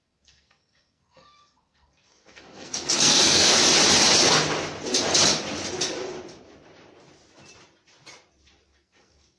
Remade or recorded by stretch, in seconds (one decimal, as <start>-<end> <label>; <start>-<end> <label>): 0.0-3.6 remade; 3.6-8.7 recorded; 8.7-9.4 remade